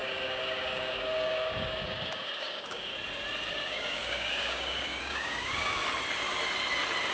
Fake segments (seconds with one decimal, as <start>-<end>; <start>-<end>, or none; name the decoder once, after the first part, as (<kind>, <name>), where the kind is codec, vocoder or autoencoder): 0.0-2.9 (codec, DAC); 3.5-5.8